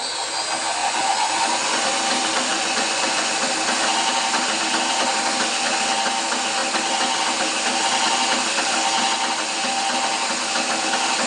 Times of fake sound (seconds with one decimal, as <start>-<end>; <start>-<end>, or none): 0.8-1.8; 2.5-3.3